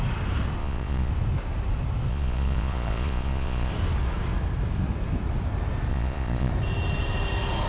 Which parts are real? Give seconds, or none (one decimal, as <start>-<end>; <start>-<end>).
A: 0.0-0.6; 1.1-2.1; 3.7-5.9; 6.5-7.7